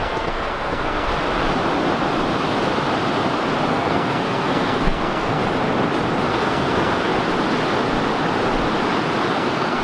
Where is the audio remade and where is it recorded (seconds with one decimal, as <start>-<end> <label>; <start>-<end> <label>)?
0.0-1.1 remade; 1.1-3.7 recorded; 3.7-5.4 remade; 5.4-6.3 recorded; 6.3-7.1 remade; 7.1-9.3 recorded; 9.3-9.8 remade